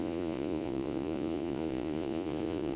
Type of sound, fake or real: fake